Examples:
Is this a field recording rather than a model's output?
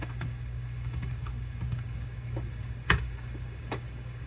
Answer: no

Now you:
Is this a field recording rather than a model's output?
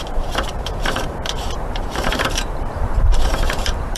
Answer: no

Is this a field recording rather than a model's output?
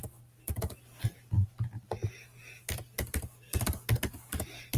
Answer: yes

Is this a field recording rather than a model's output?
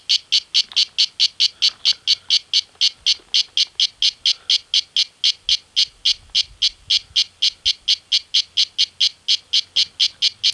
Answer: yes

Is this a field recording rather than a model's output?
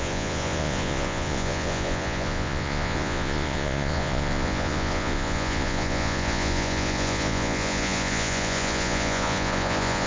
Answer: no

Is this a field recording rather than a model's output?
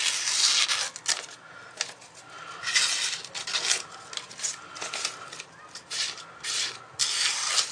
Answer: yes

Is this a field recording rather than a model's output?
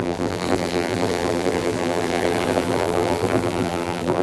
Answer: no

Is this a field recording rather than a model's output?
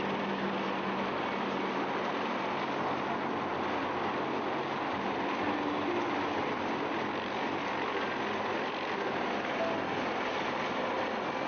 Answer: yes